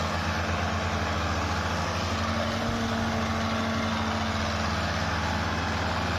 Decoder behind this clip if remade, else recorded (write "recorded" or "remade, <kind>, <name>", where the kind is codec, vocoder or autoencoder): recorded